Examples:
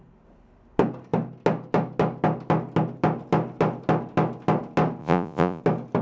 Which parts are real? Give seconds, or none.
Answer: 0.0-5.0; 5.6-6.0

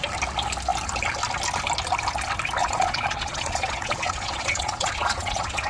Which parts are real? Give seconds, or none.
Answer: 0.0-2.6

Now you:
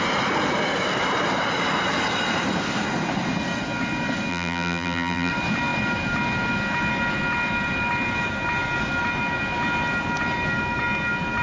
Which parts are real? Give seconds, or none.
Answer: 0.0-4.3; 5.3-11.4

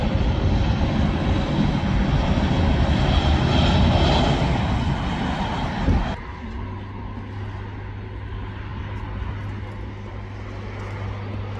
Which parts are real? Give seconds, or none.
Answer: 0.0-11.6

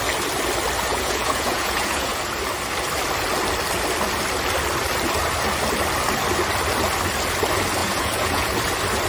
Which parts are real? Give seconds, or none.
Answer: 0.0-0.9; 2.2-7.8; 8.5-9.1

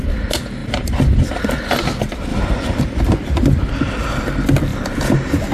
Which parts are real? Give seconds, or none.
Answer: 0.0-0.6; 1.4-2.3; 2.8-5.5

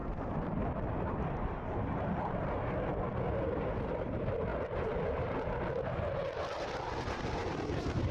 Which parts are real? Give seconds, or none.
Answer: 2.9-3.9; 4.5-7.0